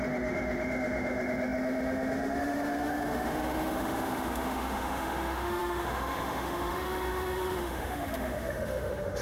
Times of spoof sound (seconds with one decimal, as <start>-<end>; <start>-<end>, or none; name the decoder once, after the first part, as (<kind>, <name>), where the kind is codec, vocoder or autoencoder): 0.0-9.2 (autoencoder, DAC-VAE)